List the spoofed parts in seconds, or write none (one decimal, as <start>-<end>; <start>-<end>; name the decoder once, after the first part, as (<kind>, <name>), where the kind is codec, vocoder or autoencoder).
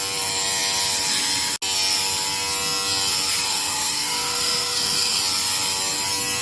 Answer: 3.5-5.2 (codec, SNAC)